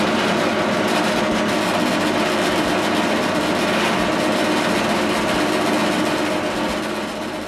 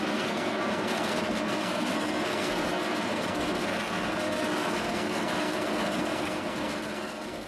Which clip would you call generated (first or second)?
second